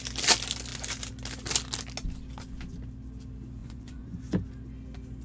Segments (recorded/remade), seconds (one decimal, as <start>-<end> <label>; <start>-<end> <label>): 0.0-3.6 recorded; 3.6-4.2 remade; 4.2-5.2 recorded